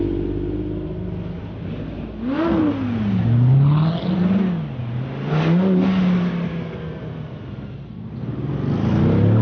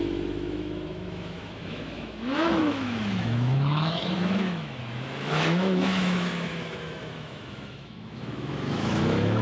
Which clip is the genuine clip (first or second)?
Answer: first